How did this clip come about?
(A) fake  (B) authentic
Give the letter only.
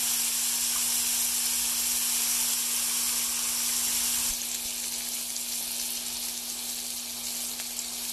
B